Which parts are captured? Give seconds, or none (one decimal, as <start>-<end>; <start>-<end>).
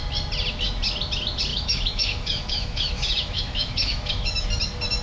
0.0-1.5; 4.5-5.0